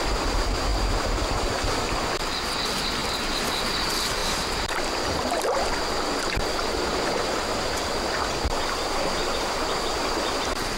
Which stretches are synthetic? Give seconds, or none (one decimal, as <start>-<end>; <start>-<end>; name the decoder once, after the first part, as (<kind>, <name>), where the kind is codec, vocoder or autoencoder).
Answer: 4.2-5.0 (vocoder, BigVGAN v2)